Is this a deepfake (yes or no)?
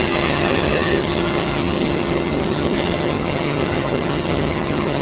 yes